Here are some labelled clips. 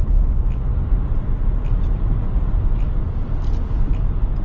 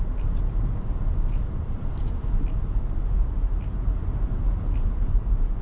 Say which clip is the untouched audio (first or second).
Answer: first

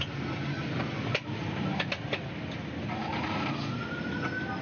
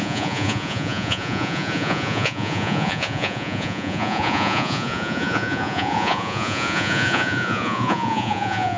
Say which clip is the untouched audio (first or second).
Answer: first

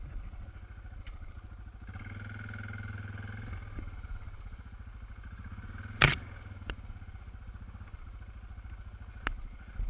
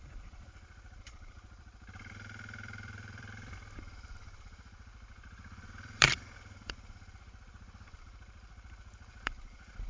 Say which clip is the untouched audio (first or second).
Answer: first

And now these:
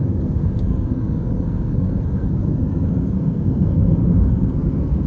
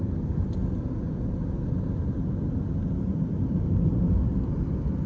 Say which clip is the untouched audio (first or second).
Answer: second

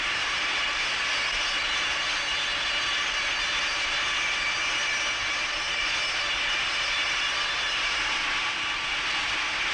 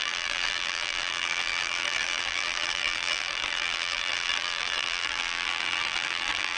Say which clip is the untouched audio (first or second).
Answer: first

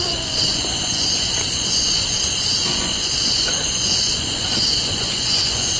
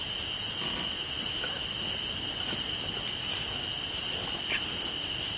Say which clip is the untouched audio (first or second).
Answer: second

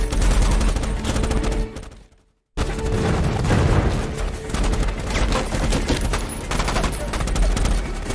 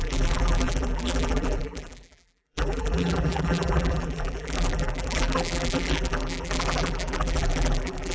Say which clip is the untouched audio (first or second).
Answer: first